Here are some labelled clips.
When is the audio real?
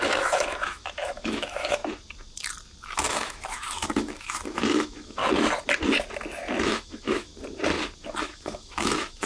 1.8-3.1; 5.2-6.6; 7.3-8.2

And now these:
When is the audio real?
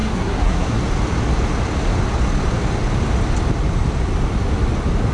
0.8-5.1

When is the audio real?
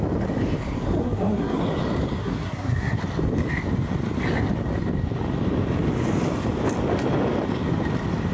0.0-1.0; 1.6-2.2; 3.0-8.3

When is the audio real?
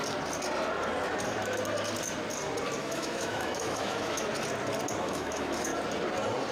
0.0-2.8; 4.2-5.0; 5.7-6.5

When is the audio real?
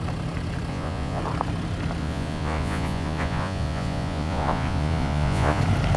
0.0-0.7; 1.2-2.0; 5.6-6.0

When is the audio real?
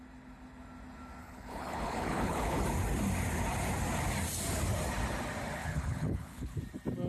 0.0-1.2; 2.6-5.6; 6.6-7.1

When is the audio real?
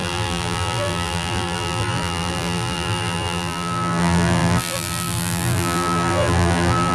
none